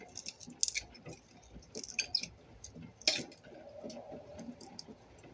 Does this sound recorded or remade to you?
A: recorded